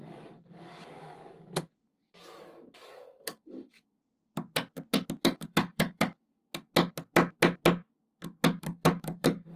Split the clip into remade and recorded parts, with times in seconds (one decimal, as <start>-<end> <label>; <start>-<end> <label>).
0.0-4.3 remade; 4.3-5.2 recorded; 5.2-6.4 remade; 6.4-8.6 recorded; 8.6-9.6 remade